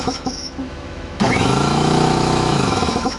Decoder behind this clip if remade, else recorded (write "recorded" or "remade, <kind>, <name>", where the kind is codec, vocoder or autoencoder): remade, autoencoder, DAC-VAE